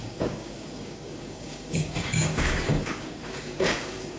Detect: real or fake fake